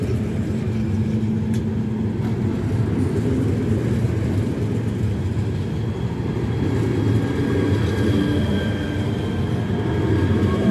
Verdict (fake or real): real